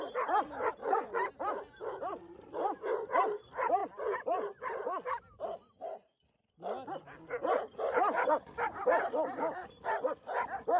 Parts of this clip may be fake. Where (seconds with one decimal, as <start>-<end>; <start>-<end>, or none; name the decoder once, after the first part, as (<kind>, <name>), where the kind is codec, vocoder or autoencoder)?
0.8-1.3 (vocoder, Vocos)